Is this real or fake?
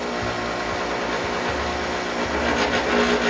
real